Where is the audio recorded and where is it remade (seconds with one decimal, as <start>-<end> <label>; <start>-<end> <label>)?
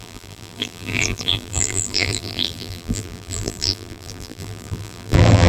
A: 0.0-5.5 remade